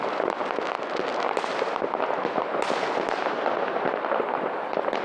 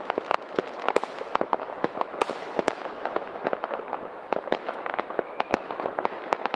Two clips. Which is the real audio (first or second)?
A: first